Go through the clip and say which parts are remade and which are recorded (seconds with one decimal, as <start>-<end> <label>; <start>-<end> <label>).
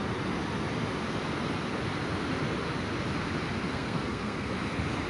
0.0-3.7 recorded; 3.7-4.5 remade; 4.5-5.1 recorded